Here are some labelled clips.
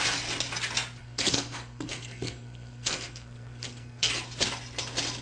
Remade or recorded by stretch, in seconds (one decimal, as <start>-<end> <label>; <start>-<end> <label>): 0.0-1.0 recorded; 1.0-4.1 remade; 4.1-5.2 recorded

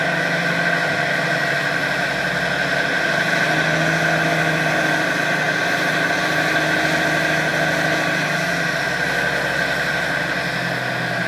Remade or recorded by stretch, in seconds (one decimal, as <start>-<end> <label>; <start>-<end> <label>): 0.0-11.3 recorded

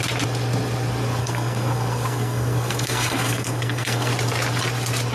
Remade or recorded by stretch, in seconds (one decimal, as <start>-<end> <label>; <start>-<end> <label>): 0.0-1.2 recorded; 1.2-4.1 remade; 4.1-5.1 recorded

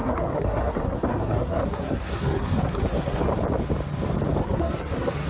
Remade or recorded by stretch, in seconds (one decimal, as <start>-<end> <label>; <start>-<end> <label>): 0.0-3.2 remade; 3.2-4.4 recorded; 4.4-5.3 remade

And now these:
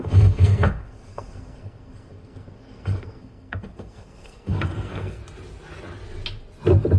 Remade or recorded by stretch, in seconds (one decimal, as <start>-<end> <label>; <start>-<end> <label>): 0.0-5.2 remade; 5.2-7.0 recorded

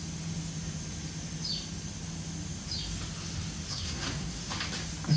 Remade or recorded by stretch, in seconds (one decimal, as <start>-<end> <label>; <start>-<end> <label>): 0.0-3.7 recorded; 3.7-4.4 remade; 4.4-5.2 recorded